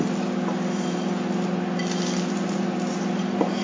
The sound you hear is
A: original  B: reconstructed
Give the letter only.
A